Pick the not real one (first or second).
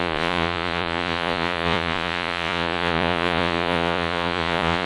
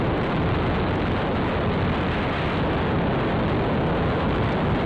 first